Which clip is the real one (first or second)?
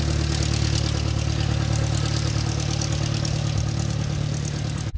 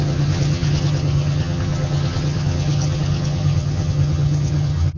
first